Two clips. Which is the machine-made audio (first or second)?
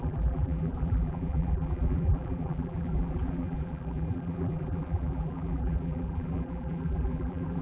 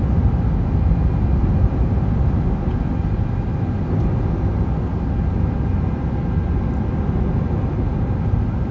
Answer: first